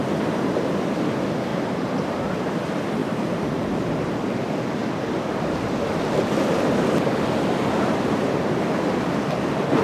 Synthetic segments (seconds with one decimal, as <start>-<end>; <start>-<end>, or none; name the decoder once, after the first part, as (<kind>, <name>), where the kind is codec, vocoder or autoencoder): 1.5-2.3 (vocoder, BigVGAN v2); 3.0-4.3